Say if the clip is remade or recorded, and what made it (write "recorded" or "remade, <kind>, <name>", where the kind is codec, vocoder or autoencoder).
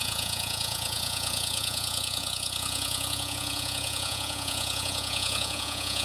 remade, vocoder, Vocos